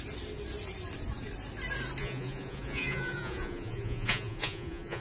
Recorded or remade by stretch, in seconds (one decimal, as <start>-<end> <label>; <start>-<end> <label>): 0.0-2.0 recorded; 2.0-5.0 remade